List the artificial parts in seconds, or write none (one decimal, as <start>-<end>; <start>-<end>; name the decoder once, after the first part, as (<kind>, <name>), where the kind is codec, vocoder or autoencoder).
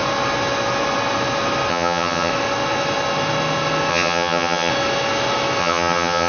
1.7-2.3 (vocoder, HiFi-GAN); 3.9-4.7; 5.6-6.3